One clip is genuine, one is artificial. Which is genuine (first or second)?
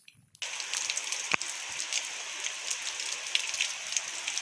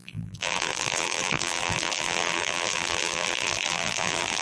first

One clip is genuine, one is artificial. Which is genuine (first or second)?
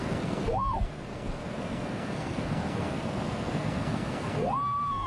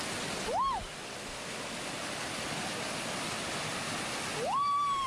second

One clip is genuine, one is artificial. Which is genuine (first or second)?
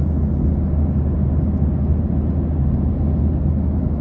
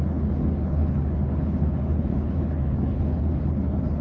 first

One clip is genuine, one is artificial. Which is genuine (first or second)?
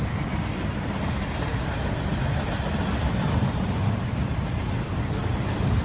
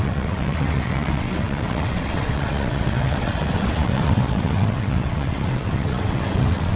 first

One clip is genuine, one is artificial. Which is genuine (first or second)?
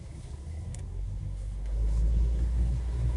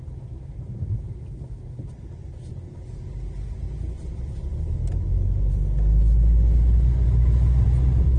second